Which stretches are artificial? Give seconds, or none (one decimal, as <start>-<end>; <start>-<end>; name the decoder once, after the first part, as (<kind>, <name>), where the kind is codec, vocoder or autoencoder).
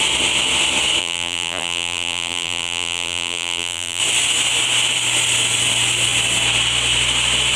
1.0-4.0 (vocoder, BigVGAN v2)